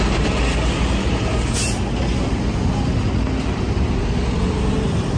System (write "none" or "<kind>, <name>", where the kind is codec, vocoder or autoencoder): none